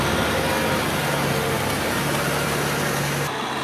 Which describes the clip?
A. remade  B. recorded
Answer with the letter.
B